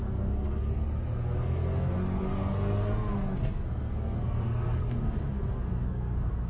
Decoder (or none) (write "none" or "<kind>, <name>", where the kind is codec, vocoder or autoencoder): codec, SNAC